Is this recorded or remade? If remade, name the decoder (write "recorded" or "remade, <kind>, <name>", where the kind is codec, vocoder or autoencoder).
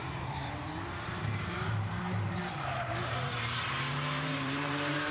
remade, vocoder, BigVGAN v2